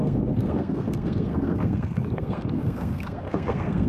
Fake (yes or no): yes